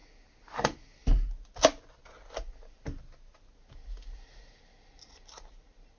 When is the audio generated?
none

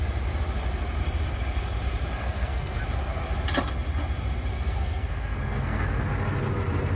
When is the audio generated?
2.2-2.8 (codec, SNAC); 4.5-6.0